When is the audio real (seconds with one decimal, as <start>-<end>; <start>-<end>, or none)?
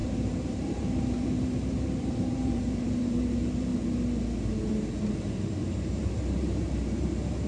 3.7-5.2